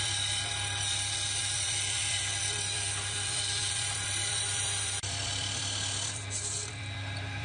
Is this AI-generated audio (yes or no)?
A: yes